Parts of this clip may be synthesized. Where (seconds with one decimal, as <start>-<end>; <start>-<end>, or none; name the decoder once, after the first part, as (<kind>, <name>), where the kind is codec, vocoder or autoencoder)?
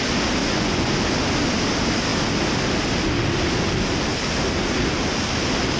0.4-0.9 (vocoder, Vocos)